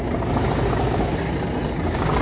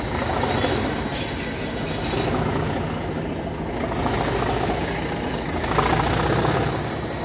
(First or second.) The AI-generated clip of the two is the first